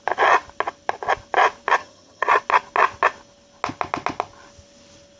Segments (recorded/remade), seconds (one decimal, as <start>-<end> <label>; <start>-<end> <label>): 0.0-1.8 recorded; 1.8-2.4 remade; 2.4-5.2 recorded